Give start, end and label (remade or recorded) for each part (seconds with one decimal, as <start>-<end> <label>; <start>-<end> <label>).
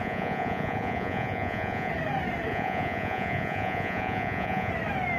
0.0-1.9 remade; 1.9-2.5 recorded; 2.5-4.7 remade; 4.7-5.2 recorded